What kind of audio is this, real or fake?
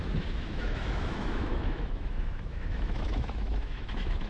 fake